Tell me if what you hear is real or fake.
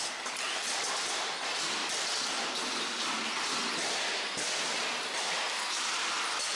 real